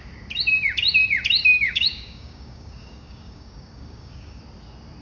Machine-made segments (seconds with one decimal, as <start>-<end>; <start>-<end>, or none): 1.4-4.4